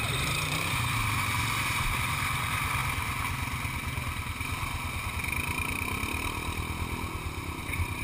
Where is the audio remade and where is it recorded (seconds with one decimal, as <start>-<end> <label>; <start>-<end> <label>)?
0.0-2.8 remade; 2.8-7.6 recorded; 7.6-8.0 remade